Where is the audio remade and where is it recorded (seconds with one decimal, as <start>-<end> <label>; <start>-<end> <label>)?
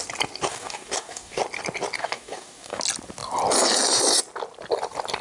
0.0-0.5 recorded; 0.5-1.4 remade; 1.4-2.0 recorded; 2.0-2.8 remade; 2.8-5.2 recorded